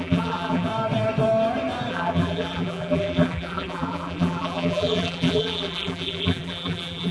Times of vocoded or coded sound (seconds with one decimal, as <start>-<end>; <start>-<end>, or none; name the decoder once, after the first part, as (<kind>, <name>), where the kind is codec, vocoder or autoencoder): 0.0-0.7 (vocoder, BigVGAN v2); 1.9-7.1

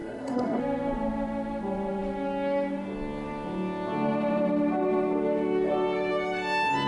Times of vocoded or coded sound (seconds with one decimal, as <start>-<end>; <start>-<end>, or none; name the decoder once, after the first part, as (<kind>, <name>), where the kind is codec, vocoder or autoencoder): 0.0-0.6 (codec, SNAC)

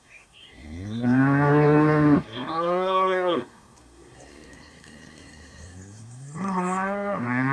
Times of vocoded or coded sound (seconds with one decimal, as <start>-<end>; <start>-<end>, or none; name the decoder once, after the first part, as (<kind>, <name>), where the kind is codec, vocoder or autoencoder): 0.0-7.5 (codec, SNAC)